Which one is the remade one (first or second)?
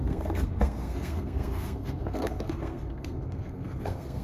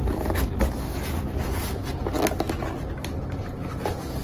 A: first